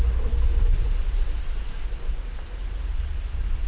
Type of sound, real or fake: real